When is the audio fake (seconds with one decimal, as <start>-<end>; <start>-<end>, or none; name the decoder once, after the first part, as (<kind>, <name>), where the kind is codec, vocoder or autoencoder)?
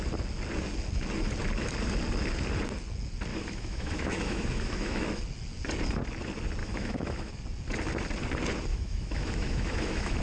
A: 3.3-5.2 (autoencoder, DAC-VAE); 6.6-7.3; 8.7-10.2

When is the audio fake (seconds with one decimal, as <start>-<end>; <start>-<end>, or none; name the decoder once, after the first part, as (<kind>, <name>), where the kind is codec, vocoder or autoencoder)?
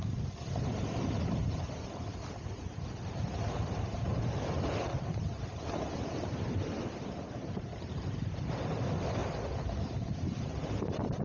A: 0.0-9.2 (vocoder, BigVGAN v2); 9.7-11.2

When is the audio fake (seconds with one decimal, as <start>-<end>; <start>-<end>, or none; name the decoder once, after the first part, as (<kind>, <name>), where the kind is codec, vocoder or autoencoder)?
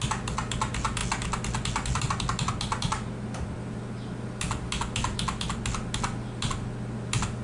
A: none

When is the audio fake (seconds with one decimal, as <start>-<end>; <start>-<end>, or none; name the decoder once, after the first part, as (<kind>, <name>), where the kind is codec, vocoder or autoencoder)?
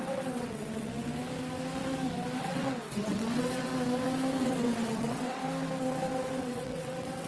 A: 0.0-0.9 (vocoder, WaveNeXt); 2.4-3.7; 4.4-5.4; 6.4-7.3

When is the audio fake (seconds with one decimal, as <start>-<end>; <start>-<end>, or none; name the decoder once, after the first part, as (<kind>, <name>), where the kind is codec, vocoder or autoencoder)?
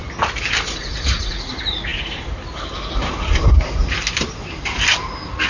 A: 0.8-1.5 (vocoder, Vocos)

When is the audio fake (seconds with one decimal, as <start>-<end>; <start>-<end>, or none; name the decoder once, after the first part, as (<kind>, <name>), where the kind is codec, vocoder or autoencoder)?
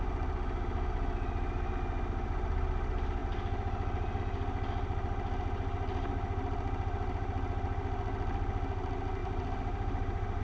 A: 9.2-10.4 (vocoder, BigVGAN v2)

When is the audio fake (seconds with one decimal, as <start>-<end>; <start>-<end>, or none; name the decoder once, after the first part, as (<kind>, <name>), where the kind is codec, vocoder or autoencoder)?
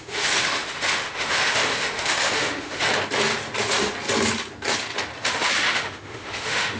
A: 0.0-2.9 (autoencoder, DAC-VAE); 5.4-6.8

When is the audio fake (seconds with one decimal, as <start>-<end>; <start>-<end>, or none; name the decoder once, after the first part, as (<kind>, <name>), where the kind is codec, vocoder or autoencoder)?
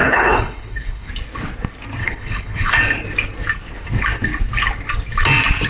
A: 0.0-1.1 (codec, HILCodec); 2.0-2.8